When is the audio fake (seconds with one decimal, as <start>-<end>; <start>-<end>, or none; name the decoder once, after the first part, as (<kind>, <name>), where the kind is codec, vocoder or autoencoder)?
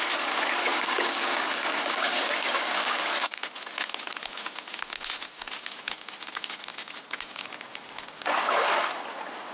0.7-3.4 (codec, DAC)